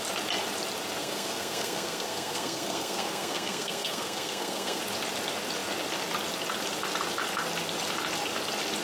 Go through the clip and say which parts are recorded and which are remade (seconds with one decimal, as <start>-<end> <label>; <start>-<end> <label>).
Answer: 0.0-1.0 recorded; 1.0-4.8 remade; 4.8-8.8 recorded